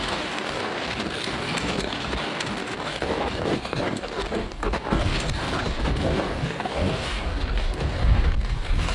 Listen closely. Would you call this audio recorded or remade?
remade